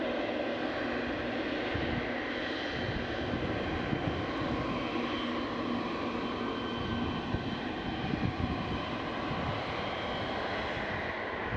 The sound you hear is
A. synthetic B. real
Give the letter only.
B